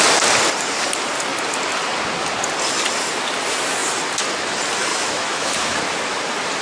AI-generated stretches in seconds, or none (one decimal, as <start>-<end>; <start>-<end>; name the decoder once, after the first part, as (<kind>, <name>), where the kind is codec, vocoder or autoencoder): 4.9-5.8 (autoencoder, DAC-VAE)